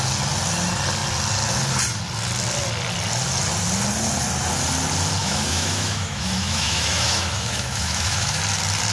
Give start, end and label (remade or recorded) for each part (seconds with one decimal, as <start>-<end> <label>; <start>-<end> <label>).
0.0-5.2 recorded; 5.2-8.4 remade; 8.4-8.9 recorded